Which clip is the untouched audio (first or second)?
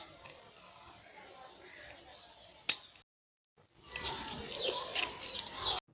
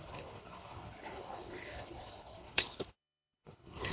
first